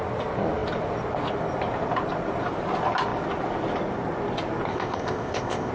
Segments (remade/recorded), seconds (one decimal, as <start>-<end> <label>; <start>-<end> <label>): 0.0-4.7 recorded; 4.7-5.7 remade